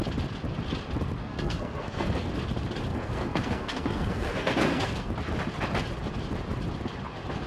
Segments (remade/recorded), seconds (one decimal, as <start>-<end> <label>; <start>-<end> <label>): 0.0-1.2 recorded; 1.2-2.3 remade; 2.3-2.9 recorded; 2.9-5.1 remade; 5.1-7.5 recorded